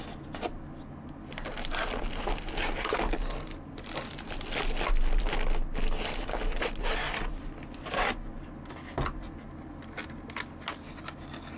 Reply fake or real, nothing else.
real